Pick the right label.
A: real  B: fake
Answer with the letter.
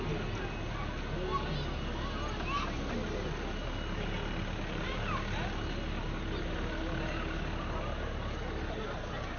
A